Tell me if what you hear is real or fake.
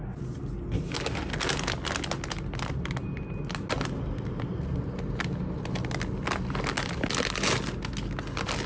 real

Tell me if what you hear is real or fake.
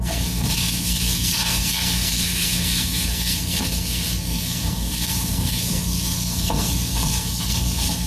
fake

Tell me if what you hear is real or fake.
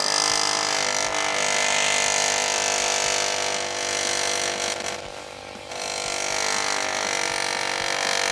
real